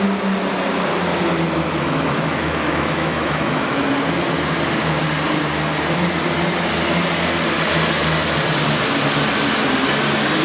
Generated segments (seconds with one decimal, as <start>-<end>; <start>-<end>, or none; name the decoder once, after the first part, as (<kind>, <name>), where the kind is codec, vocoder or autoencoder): 1.7-3.8 (autoencoder, DAC-VAE)